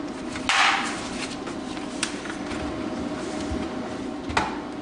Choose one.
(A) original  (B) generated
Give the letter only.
A